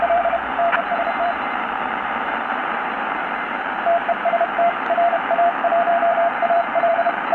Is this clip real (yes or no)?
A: no